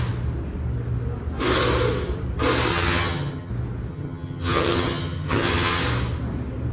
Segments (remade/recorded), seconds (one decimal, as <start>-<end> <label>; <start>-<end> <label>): 0.0-2.7 recorded; 2.7-3.5 remade; 3.5-3.9 recorded; 3.9-5.8 remade; 5.8-6.7 recorded